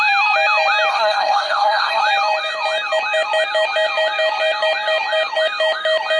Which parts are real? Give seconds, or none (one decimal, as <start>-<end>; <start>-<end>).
0.0-0.9; 2.0-6.2